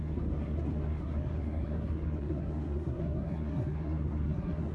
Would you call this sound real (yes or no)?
no